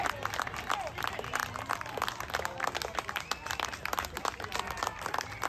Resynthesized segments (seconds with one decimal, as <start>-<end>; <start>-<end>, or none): none